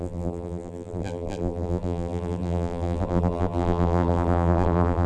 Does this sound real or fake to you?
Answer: fake